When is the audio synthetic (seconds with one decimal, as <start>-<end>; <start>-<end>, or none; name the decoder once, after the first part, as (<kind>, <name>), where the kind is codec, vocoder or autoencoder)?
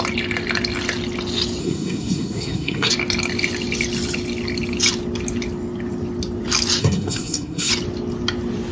1.6-2.9 (codec, SNAC); 6.8-7.7